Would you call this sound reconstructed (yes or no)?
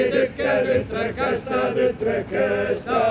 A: no